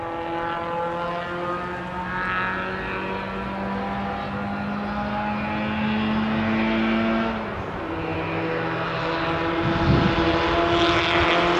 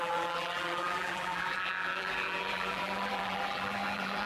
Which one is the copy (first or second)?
second